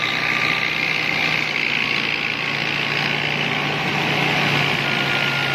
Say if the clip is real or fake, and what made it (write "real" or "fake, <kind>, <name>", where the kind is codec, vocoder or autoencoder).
real